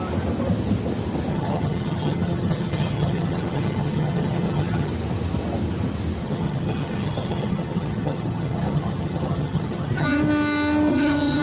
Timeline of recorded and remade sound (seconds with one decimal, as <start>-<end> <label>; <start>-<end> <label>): 0.0-1.3 recorded; 1.3-4.9 remade; 4.9-6.2 recorded; 6.2-10.2 remade; 10.2-10.9 recorded; 10.9-11.4 remade